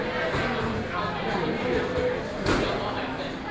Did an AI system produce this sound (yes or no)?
no